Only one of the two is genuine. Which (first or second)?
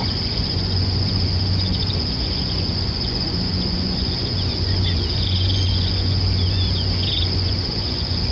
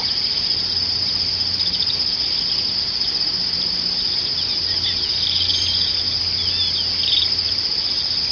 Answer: second